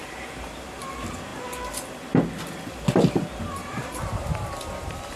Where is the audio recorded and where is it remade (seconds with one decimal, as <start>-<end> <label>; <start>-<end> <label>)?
0.0-0.8 remade; 0.8-3.6 recorded; 3.6-4.5 remade; 4.5-5.2 recorded